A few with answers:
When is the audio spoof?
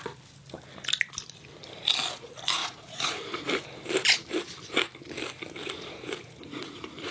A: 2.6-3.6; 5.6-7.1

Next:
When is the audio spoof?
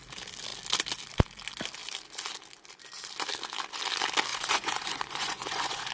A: 4.3-5.9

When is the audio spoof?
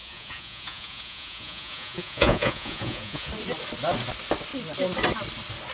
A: 0.0-3.3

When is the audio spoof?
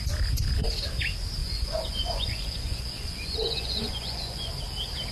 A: 1.4-4.5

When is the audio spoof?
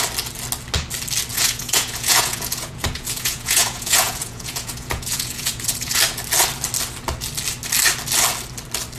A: 1.3-6.0